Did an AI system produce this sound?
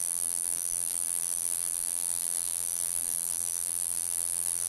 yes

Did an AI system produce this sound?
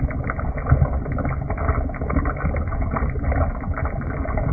no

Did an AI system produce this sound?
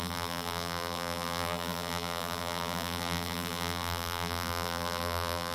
yes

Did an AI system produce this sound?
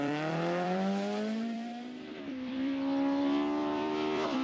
yes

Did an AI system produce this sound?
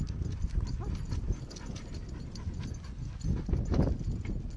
no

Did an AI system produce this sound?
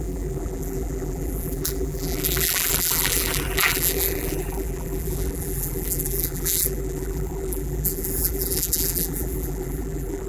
yes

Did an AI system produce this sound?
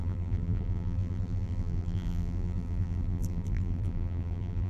yes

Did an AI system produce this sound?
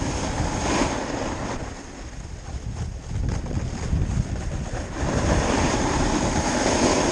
no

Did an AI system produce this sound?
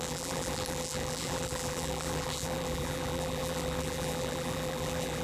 yes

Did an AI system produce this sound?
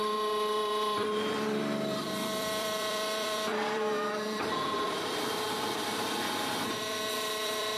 yes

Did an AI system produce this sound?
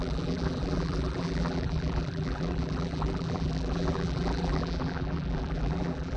yes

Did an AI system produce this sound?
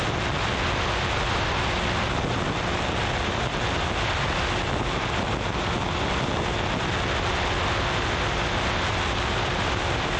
no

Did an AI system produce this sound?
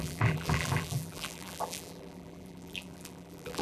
yes